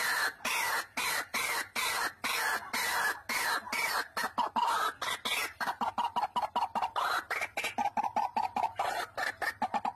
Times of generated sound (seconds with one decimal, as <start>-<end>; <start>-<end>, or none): none